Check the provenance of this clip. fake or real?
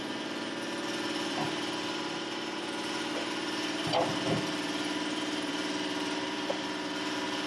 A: fake